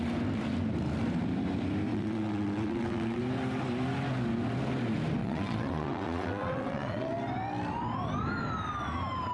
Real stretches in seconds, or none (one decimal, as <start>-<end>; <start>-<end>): 0.0-1.9; 3.2-5.2; 7.1-9.3